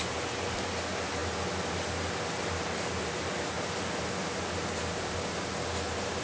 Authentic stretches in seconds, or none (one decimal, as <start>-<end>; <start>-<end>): 0.0-6.2